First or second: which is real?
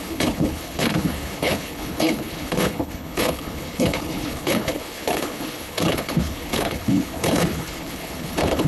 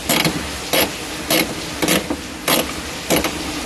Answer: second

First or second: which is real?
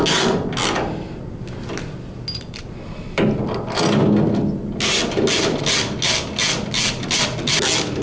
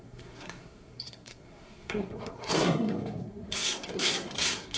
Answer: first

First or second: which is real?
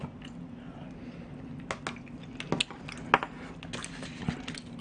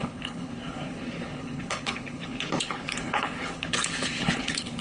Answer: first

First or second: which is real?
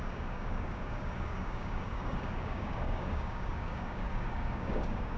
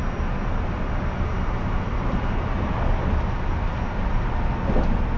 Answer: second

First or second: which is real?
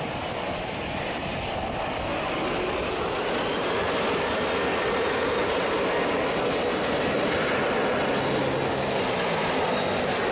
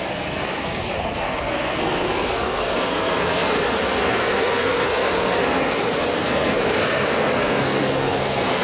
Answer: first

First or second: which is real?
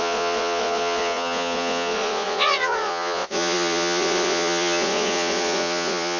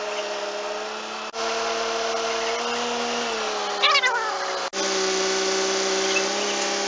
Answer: second